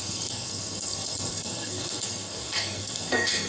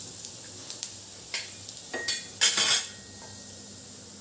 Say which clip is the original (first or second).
second